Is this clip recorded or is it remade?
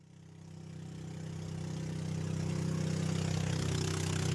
recorded